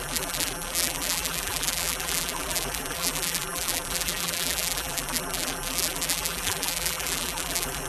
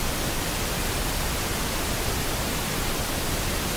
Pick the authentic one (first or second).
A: second